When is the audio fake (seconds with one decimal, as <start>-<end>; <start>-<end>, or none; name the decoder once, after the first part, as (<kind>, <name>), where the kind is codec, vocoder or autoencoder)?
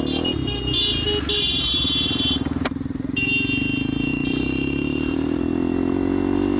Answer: 4.1-5.4 (vocoder, BigVGAN v2)